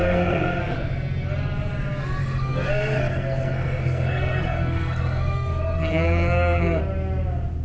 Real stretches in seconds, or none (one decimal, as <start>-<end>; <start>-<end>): 0.6-2.2; 6.8-7.6